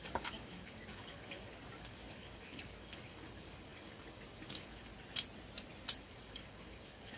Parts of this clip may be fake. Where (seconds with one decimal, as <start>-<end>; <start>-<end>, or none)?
0.0-4.9; 6.0-7.2